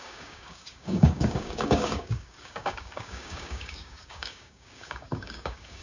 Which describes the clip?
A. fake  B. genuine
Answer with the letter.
A